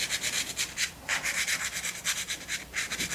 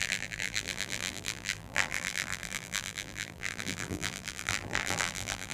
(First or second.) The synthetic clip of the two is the second